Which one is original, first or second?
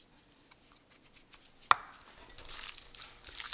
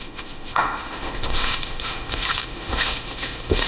first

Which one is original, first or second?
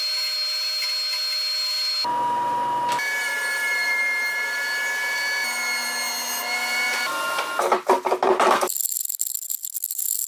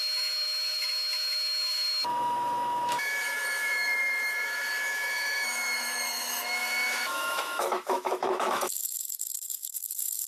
first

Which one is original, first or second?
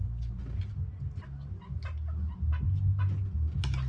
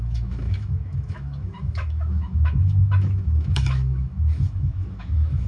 first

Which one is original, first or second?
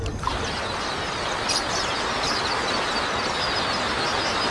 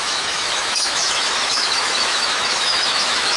first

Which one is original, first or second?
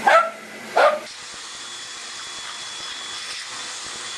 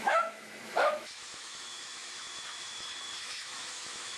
first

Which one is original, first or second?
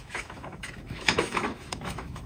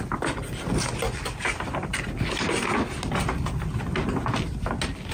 second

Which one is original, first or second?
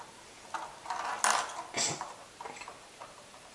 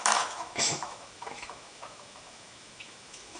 first